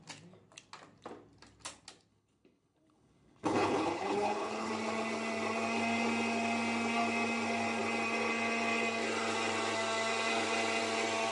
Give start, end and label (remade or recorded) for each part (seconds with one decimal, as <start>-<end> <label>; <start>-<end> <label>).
0.0-2.1 recorded; 2.1-4.7 remade; 4.7-11.3 recorded